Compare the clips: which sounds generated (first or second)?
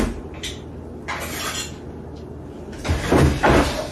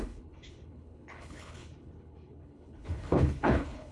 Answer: second